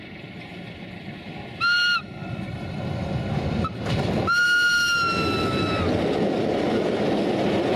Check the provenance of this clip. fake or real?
real